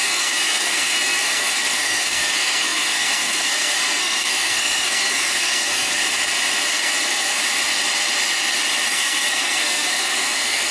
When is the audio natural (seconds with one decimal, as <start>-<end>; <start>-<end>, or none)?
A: 6.0-6.7; 7.4-8.9

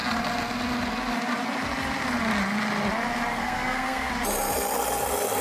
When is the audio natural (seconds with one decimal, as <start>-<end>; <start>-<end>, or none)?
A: 0.0-3.3; 4.1-5.4

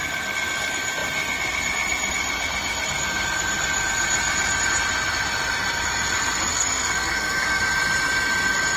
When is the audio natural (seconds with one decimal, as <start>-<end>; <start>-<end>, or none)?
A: 0.0-6.5; 7.6-8.8

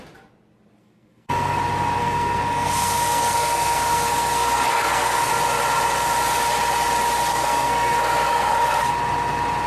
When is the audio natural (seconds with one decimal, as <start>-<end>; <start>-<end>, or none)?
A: 0.0-0.8; 1.6-2.0; 5.3-7.3; 8.9-9.7